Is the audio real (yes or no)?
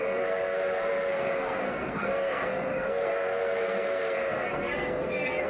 no